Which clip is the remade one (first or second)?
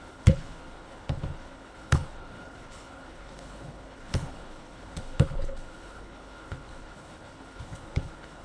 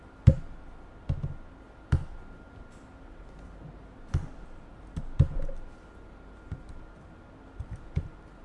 first